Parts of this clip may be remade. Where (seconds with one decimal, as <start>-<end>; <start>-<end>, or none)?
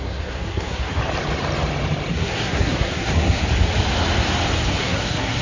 0.0-1.0; 2.1-3.4; 4.7-5.4